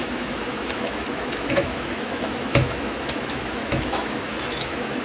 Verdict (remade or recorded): remade